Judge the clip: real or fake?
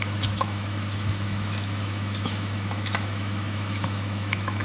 fake